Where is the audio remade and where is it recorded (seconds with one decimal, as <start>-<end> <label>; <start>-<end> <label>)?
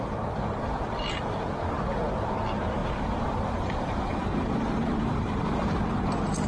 0.0-2.8 recorded; 2.8-6.1 remade; 6.1-6.5 recorded